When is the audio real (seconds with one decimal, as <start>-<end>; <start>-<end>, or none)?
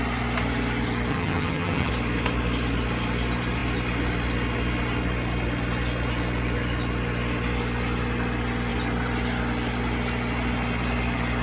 0.0-1.1; 1.9-11.4